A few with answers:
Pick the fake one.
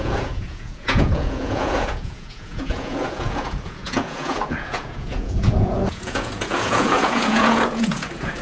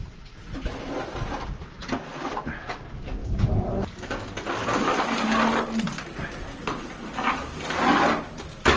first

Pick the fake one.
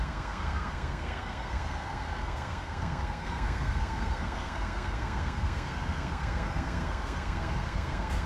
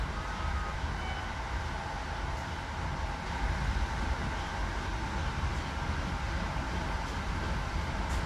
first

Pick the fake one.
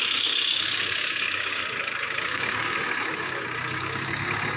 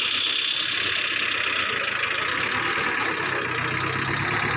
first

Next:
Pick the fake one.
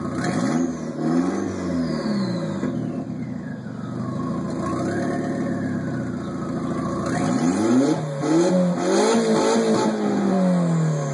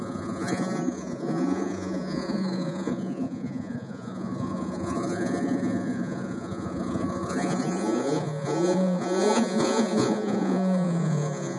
second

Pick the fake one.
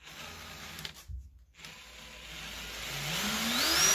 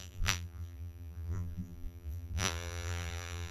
second